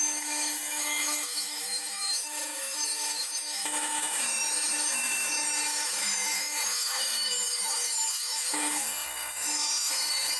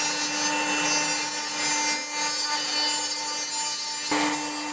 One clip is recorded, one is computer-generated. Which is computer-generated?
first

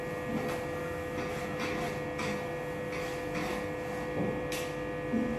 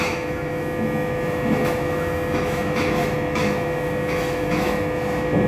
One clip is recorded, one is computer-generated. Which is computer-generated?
second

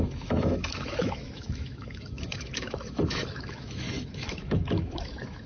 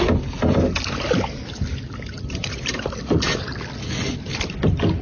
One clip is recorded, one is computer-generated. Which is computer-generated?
first